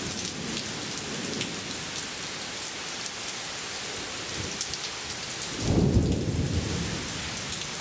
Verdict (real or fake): real